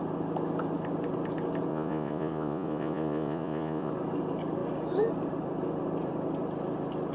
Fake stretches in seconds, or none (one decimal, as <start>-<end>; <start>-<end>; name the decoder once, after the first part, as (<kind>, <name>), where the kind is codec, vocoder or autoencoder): 1.7-3.9 (vocoder, Vocos)